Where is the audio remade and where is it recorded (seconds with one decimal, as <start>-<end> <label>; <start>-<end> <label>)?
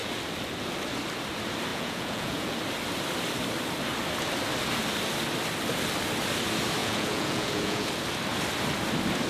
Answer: 0.0-1.7 recorded; 1.7-2.5 remade; 2.5-6.8 recorded; 6.8-7.9 remade; 7.9-9.3 recorded